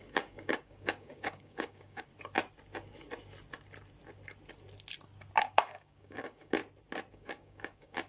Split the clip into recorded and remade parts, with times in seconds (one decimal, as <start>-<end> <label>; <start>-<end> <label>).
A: 0.0-2.1 remade; 2.1-5.4 recorded; 5.4-6.6 remade; 6.6-7.1 recorded; 7.1-8.1 remade